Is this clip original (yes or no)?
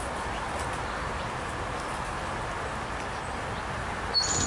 yes